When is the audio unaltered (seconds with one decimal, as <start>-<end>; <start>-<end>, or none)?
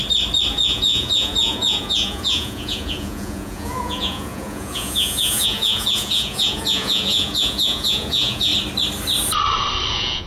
0.0-0.5; 8.5-9.9